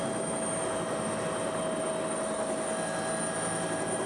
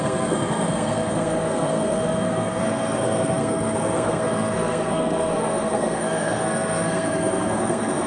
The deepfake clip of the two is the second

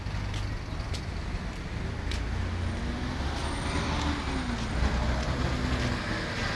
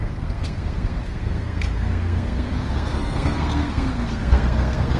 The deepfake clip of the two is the second